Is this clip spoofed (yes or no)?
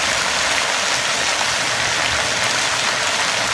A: no